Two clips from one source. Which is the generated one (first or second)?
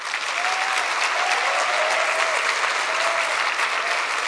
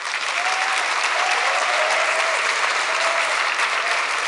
second